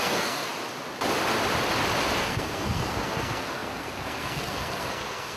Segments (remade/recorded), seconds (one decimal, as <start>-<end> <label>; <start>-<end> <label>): 0.0-0.5 remade; 0.5-2.2 recorded; 2.2-5.4 remade